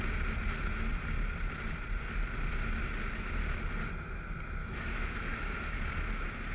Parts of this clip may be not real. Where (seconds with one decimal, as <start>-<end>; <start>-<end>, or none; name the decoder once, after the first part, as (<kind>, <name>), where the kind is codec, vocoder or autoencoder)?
4.6-5.8 (autoencoder, DAC-VAE)